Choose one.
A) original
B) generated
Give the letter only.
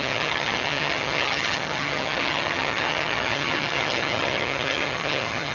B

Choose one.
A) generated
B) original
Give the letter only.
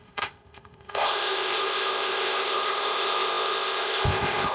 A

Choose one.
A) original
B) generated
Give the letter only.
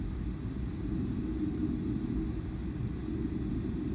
A